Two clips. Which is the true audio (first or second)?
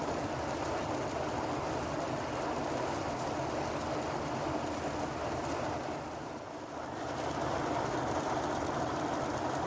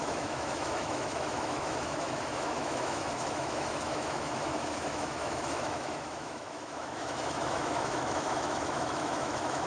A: first